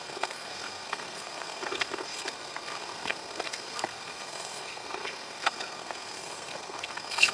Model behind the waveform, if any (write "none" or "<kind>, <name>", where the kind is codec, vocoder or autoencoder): codec, SNAC